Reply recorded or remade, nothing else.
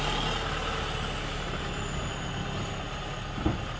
recorded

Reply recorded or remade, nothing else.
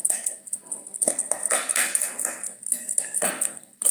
remade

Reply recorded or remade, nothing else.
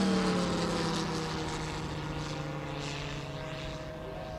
recorded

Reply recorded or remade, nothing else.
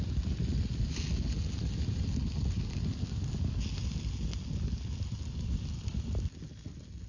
recorded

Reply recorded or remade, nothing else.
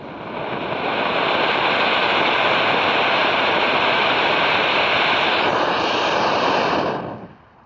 recorded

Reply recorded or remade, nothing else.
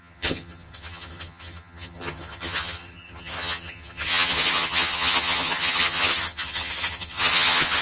remade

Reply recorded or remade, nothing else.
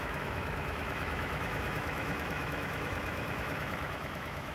remade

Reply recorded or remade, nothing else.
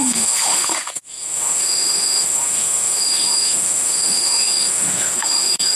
remade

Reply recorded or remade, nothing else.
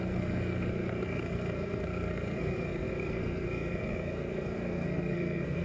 remade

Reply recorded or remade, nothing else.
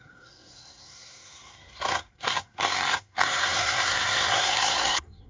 remade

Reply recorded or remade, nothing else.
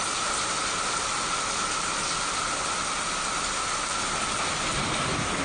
recorded